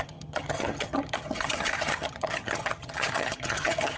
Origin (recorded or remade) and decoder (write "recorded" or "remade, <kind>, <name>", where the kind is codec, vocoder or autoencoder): remade, vocoder, HiFi-GAN